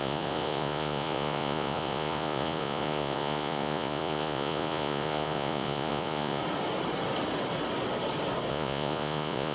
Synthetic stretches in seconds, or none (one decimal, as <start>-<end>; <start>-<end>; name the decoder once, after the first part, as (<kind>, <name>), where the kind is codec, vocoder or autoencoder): 0.0-6.4 (vocoder, Vocos); 8.5-9.5